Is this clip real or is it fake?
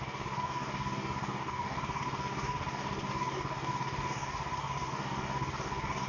fake